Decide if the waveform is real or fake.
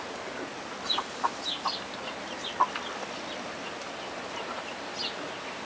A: real